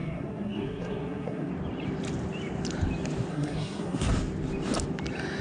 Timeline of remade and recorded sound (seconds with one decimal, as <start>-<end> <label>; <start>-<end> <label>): 0.0-1.5 remade; 1.5-3.3 recorded; 3.3-4.1 remade; 4.1-5.4 recorded